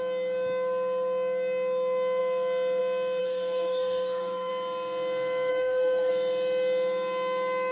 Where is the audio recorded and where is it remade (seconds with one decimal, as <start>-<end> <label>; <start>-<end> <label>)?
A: 0.0-3.2 recorded; 3.2-4.5 remade; 4.5-5.5 recorded; 5.5-6.1 remade; 6.1-7.7 recorded